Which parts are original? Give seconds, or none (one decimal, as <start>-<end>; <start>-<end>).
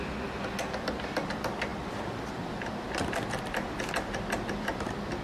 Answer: 0.0-5.2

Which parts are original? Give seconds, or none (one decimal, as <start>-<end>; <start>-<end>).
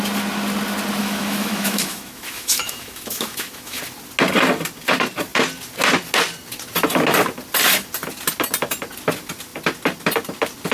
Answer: 0.0-1.0; 3.8-10.7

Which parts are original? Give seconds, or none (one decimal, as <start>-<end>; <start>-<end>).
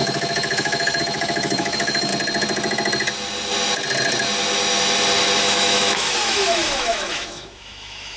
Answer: 2.1-5.4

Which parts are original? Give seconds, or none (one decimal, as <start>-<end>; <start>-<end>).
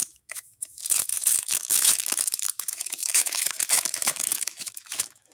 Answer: none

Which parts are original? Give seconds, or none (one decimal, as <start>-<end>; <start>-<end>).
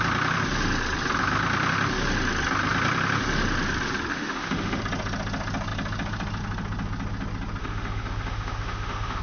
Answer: 0.0-4.1; 4.8-7.6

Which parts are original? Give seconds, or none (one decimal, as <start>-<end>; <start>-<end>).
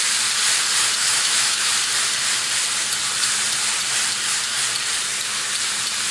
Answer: 0.0-1.0; 1.7-6.1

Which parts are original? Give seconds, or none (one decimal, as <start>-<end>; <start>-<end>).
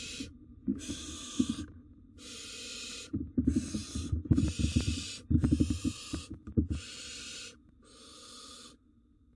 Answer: 0.0-0.7; 1.5-9.4